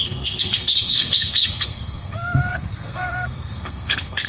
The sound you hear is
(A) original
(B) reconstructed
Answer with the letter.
B